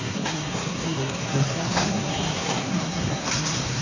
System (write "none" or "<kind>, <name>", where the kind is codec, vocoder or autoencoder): codec, SNAC